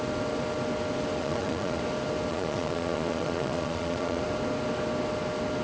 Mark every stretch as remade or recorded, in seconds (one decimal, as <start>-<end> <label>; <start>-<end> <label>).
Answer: 0.0-1.2 recorded; 1.2-1.8 remade; 1.8-2.3 recorded; 2.3-4.2 remade; 4.2-5.6 recorded

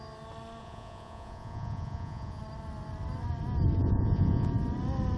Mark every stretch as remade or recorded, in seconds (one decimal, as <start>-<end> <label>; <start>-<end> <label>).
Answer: 0.0-0.6 recorded; 0.6-2.4 remade; 2.4-3.8 recorded; 3.8-4.5 remade; 4.5-5.2 recorded